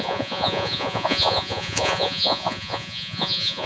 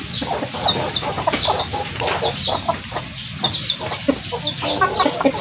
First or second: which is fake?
first